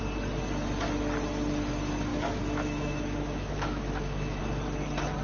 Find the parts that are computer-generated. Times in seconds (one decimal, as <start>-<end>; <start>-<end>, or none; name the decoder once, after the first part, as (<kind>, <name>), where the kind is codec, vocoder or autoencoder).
2.1-4.4 (autoencoder, DAC-VAE)